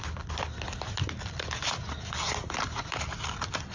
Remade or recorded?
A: recorded